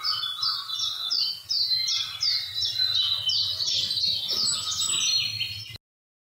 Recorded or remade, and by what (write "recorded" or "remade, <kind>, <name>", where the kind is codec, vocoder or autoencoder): recorded